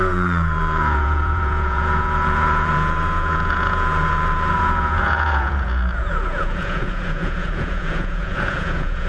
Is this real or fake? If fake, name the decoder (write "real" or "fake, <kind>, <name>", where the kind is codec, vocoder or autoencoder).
fake, vocoder, Vocos